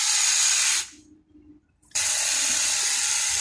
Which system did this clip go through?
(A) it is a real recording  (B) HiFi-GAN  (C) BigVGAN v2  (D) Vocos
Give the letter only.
C